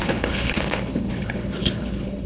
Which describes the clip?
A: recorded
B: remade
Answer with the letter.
B